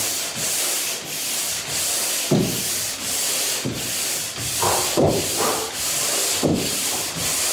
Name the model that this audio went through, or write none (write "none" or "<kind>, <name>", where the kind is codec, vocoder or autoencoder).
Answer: vocoder, BigVGAN v2